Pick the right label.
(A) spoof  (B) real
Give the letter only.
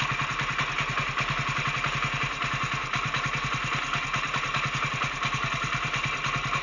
B